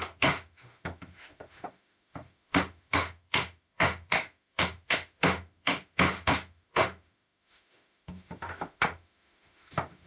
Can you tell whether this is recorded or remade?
remade